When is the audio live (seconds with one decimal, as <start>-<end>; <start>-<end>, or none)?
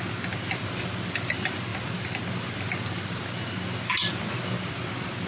0.0-5.3